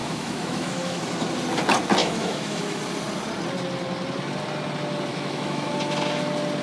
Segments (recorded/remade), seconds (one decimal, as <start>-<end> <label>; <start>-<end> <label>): 0.0-1.0 remade; 1.0-2.0 recorded; 2.0-2.8 remade; 2.8-5.1 recorded; 5.1-5.7 remade; 5.7-6.6 recorded